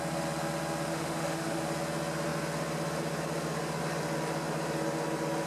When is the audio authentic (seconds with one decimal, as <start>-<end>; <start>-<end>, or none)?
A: 0.0-0.9; 1.6-5.5